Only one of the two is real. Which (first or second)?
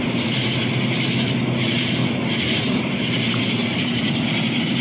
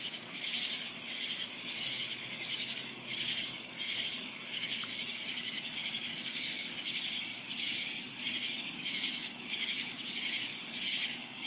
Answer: first